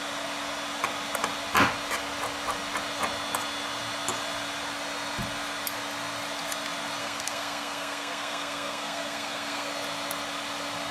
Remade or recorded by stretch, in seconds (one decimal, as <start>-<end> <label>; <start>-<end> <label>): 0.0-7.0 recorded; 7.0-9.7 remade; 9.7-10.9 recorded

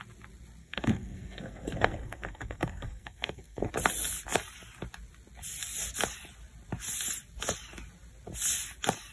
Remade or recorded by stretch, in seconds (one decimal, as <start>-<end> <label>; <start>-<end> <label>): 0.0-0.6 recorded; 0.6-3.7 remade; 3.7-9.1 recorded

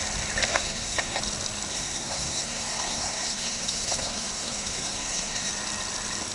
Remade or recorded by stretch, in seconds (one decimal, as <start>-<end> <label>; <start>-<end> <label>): 0.0-0.5 recorded; 0.5-1.2 remade; 1.2-1.7 recorded; 1.7-5.5 remade; 5.5-6.3 recorded